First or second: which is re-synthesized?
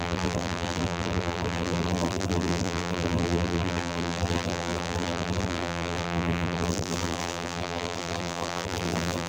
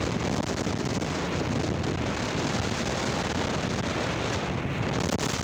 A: first